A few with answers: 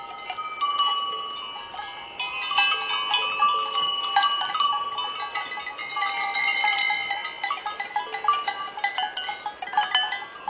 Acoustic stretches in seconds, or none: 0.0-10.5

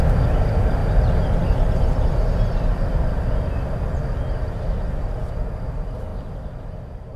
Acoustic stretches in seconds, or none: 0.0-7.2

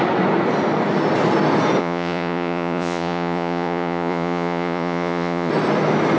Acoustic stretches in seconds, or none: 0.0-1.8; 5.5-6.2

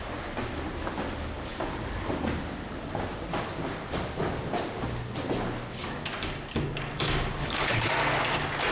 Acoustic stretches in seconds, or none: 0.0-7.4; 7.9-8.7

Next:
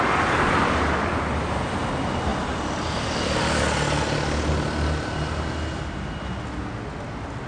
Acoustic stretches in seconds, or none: 0.0-7.5

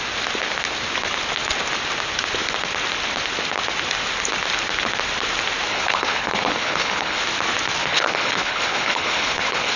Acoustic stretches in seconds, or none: 0.0-5.7; 7.2-7.8

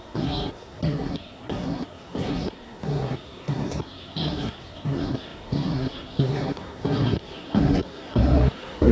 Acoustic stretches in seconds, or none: none